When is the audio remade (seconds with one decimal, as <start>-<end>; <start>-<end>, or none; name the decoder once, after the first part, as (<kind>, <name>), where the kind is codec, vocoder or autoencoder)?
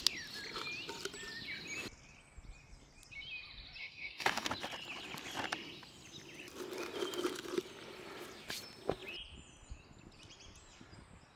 3.8-4.5 (codec, DAC)